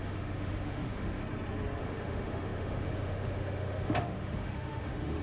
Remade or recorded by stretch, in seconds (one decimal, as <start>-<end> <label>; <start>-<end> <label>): 0.0-1.2 remade; 1.2-1.8 recorded; 1.8-5.2 remade